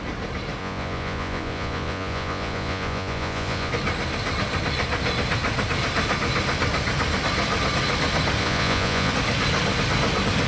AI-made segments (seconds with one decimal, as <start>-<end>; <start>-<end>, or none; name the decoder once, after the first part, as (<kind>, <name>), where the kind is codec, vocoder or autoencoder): 0.6-3.7 (vocoder, Vocos); 8.4-9.1